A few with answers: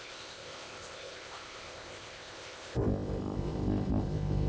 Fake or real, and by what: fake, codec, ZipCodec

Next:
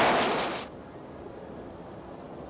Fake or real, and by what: real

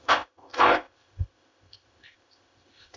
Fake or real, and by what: fake, codec, ZipCodec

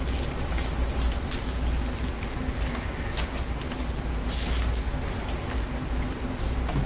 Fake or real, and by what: real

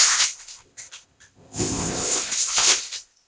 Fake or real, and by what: fake, codec, ZipCodec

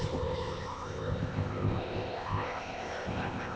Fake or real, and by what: fake, codec, ZipCodec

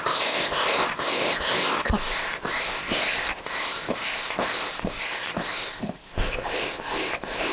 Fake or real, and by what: fake, codec, ZipCodec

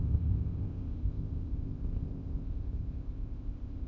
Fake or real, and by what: fake, codec, ZipCodec